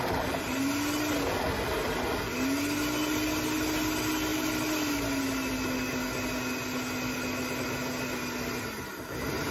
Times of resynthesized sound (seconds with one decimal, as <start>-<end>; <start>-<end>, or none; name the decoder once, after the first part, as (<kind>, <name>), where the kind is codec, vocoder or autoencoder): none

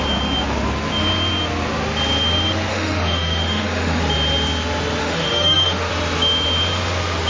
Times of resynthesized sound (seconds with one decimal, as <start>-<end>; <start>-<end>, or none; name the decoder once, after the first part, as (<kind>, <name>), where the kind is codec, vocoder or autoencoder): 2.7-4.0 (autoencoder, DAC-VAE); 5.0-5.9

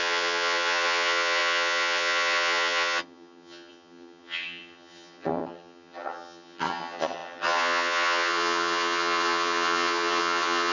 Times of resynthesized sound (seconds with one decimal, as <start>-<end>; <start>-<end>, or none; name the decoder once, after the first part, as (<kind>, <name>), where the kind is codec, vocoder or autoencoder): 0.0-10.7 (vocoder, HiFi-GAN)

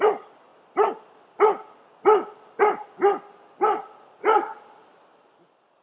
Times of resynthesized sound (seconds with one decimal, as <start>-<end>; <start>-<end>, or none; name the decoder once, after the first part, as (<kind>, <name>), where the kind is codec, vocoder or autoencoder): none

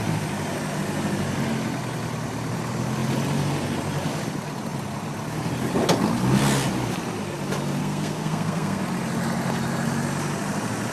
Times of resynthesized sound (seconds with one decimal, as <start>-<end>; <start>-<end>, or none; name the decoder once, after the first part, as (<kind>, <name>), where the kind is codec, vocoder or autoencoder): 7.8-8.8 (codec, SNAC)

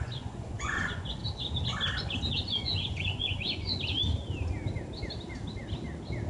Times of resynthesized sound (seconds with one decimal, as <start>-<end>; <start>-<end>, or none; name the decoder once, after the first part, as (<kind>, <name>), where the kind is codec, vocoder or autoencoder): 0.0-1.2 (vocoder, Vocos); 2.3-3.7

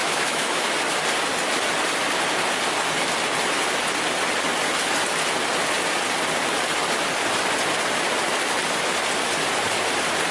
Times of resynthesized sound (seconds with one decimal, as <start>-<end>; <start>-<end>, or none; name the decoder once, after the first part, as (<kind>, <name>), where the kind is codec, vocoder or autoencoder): 0.0-0.7 (autoencoder, DAC-VAE)